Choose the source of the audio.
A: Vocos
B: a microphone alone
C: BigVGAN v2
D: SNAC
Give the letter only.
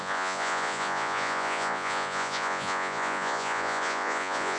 A